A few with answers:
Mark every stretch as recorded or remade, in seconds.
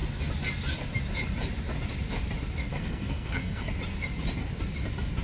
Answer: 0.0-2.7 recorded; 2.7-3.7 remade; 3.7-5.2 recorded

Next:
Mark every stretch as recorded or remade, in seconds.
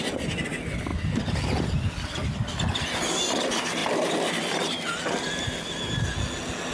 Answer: 0.0-6.7 recorded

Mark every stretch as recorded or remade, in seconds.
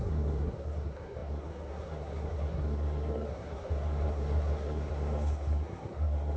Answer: 0.0-6.4 remade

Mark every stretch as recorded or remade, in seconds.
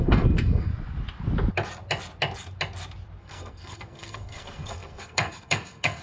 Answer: 0.0-0.7 remade; 0.7-3.2 recorded; 3.2-6.0 remade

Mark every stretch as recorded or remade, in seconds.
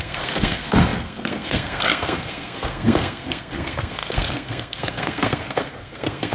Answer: 0.0-6.3 remade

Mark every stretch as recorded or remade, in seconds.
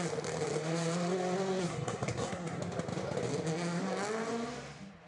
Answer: 0.0-1.6 recorded; 1.6-2.6 remade; 2.6-5.1 recorded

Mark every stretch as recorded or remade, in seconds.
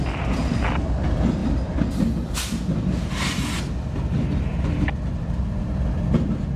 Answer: 0.0-6.6 recorded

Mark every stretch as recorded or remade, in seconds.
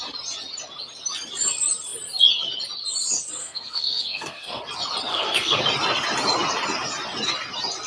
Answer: 0.0-3.4 recorded; 3.4-4.6 remade; 4.6-5.1 recorded; 5.1-5.6 remade; 5.6-7.9 recorded